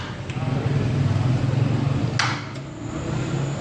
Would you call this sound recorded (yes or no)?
yes